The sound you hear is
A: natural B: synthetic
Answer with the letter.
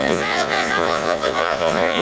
B